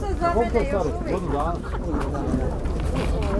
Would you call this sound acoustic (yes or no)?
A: yes